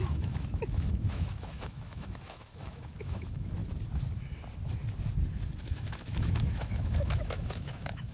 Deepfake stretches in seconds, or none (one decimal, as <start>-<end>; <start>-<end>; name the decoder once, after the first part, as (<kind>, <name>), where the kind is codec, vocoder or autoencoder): 0.0-3.6 (autoencoder, DAC-VAE); 5.6-8.1